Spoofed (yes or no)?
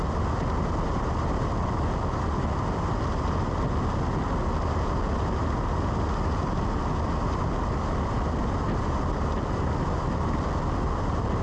no